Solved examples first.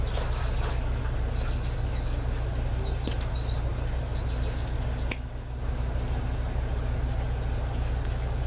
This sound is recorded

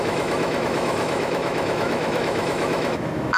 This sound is remade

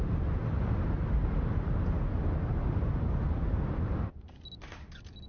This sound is recorded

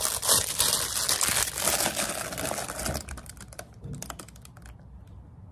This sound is recorded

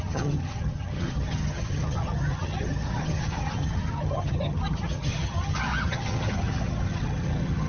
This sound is remade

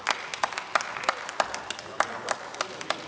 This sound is recorded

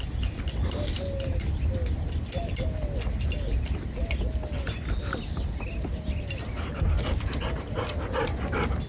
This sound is recorded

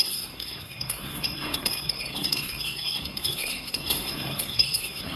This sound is remade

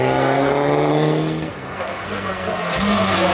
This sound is remade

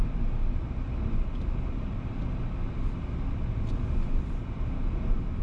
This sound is recorded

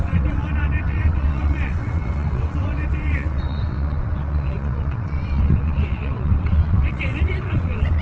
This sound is remade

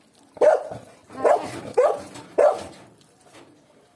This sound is recorded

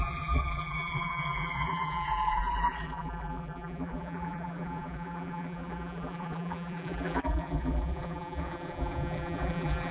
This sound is remade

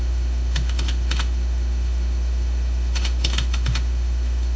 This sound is remade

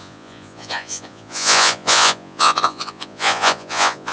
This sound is remade